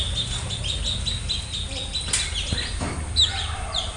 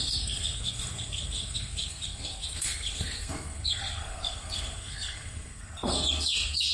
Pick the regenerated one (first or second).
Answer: second